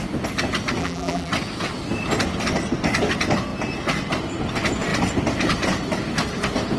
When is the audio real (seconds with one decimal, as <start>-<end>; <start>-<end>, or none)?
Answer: 0.0-0.8; 1.3-6.8